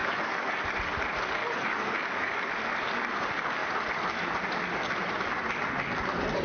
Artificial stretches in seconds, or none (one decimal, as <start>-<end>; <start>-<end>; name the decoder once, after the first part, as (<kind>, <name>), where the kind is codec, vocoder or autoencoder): 0.0-0.6 (codec, DAC); 1.4-2.5